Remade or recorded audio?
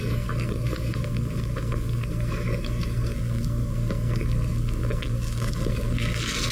remade